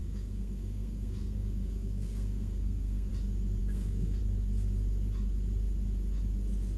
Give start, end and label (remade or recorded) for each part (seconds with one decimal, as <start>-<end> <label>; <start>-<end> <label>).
0.0-3.1 remade; 3.1-3.6 recorded; 3.6-4.2 remade; 4.2-6.8 recorded

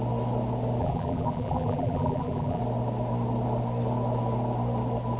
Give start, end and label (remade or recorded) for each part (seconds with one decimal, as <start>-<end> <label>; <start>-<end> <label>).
0.0-0.8 recorded; 0.8-2.6 remade; 2.6-5.2 recorded